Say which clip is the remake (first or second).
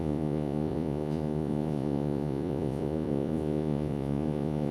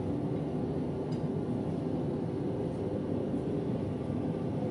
first